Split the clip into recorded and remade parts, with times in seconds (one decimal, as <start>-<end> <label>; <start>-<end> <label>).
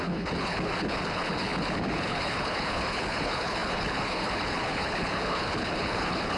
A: 0.0-6.4 remade